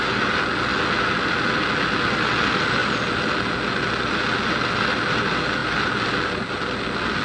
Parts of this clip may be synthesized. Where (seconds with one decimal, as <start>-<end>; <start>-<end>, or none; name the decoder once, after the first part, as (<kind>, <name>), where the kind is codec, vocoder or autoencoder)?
none